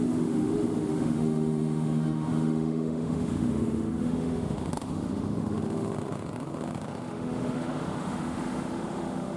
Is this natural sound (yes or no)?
no